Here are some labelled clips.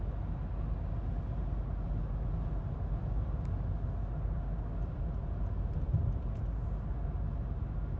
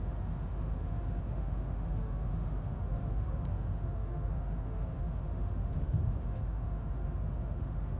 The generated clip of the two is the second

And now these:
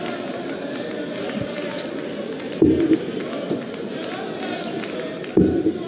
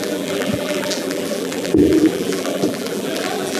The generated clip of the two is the second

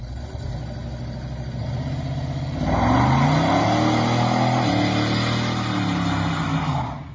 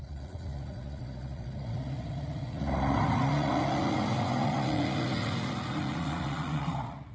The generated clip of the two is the second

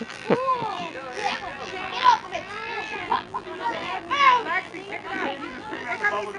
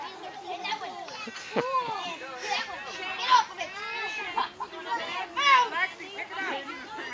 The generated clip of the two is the first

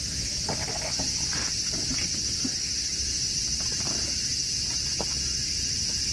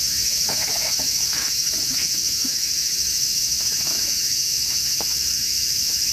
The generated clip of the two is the second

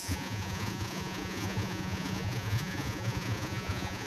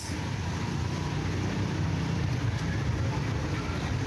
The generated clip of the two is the first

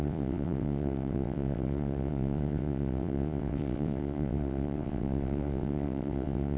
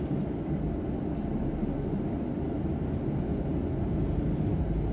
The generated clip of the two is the first